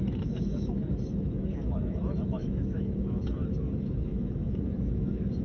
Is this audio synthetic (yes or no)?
yes